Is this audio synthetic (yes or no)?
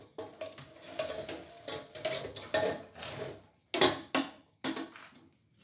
no